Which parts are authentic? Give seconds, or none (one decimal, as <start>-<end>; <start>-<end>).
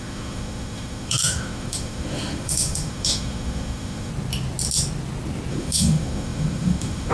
4.1-5.5